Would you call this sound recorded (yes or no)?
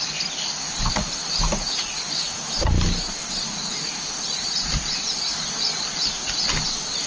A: yes